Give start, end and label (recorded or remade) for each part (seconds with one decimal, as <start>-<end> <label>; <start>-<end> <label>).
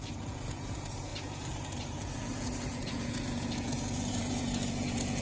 0.0-5.2 remade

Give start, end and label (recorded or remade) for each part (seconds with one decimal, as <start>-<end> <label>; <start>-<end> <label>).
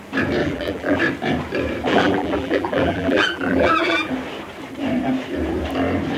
0.0-0.4 recorded; 0.4-1.0 remade; 1.0-1.9 recorded; 1.9-4.1 remade; 4.1-6.2 recorded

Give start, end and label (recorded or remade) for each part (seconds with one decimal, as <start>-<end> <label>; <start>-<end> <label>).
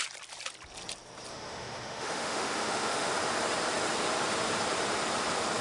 0.0-1.3 recorded; 1.3-3.1 remade; 3.1-5.6 recorded